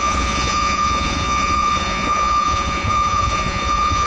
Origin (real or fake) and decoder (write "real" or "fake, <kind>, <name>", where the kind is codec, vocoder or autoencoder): fake, vocoder, Vocos